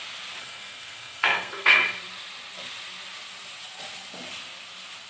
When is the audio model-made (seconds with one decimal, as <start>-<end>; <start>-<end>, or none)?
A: 0.4-1.8